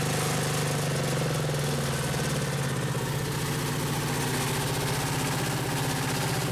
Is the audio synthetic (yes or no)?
no